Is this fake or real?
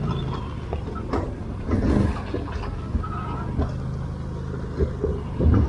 real